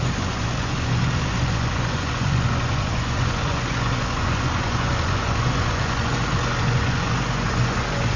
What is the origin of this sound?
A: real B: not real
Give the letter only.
B